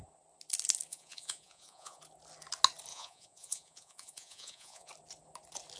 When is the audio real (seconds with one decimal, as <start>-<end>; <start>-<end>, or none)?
0.0-0.9; 2.0-2.9; 4.9-5.8